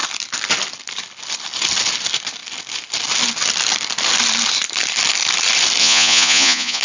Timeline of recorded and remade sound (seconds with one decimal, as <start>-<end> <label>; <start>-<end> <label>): 0.0-5.8 recorded; 5.8-6.8 remade